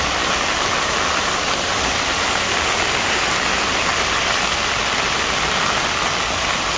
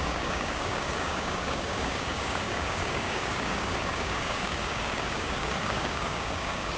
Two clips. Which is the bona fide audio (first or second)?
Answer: first